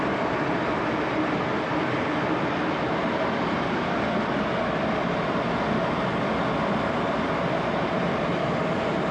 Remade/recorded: remade